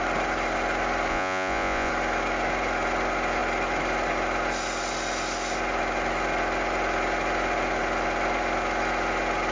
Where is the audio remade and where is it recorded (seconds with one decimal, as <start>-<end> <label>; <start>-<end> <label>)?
0.0-1.1 recorded; 1.1-1.9 remade; 1.9-9.5 recorded